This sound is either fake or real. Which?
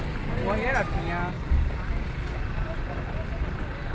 real